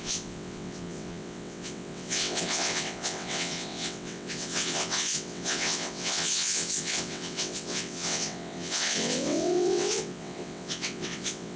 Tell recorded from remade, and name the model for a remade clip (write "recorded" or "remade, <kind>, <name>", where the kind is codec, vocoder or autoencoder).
remade, vocoder, WaveNeXt